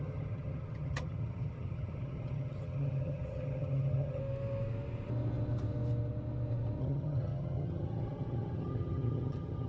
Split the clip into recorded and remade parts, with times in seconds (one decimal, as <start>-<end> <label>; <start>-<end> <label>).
0.0-4.2 remade; 4.2-6.8 recorded; 6.8-9.7 remade